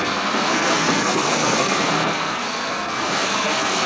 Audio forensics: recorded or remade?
remade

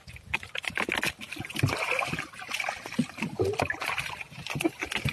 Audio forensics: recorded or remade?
recorded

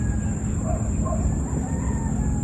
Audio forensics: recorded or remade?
recorded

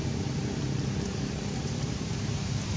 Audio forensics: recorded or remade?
remade